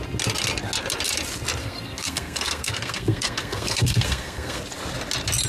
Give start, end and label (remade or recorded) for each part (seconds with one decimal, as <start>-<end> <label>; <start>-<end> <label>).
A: 0.0-1.6 recorded; 1.6-4.6 remade; 4.6-5.5 recorded